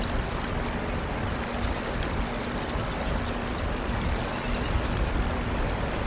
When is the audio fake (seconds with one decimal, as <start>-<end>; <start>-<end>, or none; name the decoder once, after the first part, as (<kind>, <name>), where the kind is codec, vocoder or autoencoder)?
none